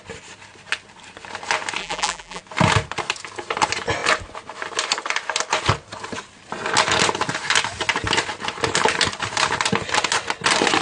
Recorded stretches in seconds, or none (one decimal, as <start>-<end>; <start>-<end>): 0.0-1.8; 2.4-10.8